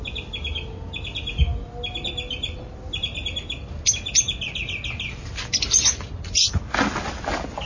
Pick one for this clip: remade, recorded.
recorded